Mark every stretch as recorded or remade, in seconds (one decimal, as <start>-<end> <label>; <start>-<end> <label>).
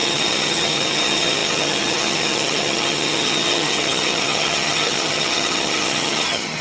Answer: 0.0-6.6 remade